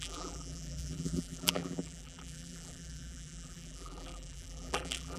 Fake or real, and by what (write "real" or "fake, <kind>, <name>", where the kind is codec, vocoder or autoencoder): fake, vocoder, BigVGAN v2